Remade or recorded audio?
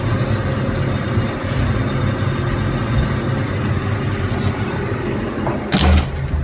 recorded